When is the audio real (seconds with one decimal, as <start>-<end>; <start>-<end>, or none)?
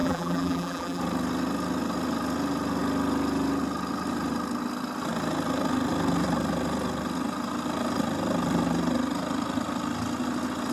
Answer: 1.0-10.7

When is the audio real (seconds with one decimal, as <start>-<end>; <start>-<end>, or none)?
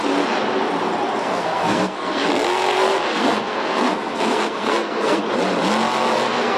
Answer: 0.0-1.2; 5.2-6.1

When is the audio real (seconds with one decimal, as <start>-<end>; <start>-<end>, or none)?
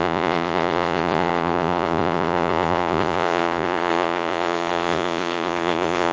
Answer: none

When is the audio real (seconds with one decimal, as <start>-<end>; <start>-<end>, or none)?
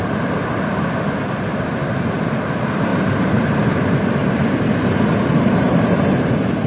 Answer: 0.0-1.5; 2.3-2.9; 3.4-4.2; 6.3-6.7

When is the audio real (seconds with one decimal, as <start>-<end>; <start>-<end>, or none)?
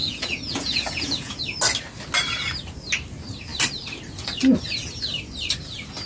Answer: 1.4-6.1